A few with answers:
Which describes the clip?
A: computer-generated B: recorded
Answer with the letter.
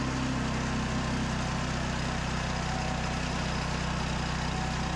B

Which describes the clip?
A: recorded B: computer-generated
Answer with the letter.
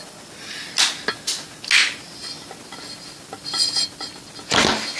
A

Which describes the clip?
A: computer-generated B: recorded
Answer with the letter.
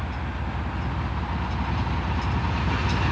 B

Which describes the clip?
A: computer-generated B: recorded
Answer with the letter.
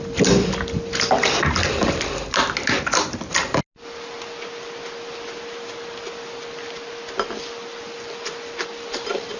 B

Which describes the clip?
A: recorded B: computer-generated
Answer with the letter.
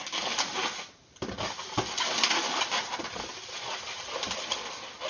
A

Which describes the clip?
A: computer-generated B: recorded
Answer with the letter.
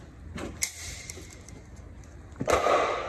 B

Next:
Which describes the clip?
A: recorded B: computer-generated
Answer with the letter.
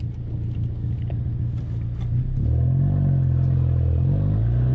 A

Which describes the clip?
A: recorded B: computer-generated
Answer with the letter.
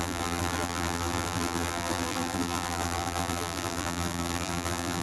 B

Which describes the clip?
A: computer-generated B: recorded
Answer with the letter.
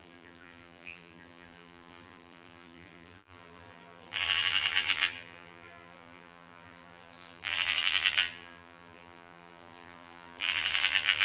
A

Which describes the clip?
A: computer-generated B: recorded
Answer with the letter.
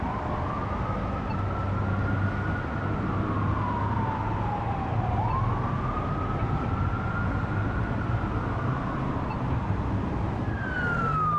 B